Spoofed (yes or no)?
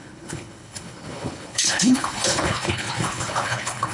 yes